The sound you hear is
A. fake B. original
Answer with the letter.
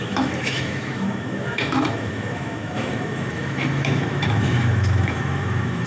A